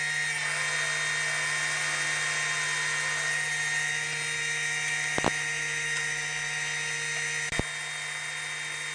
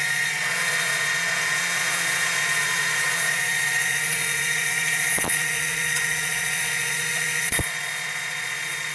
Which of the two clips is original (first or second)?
first